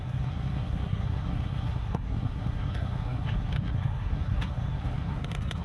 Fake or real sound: fake